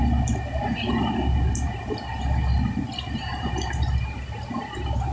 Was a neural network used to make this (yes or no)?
no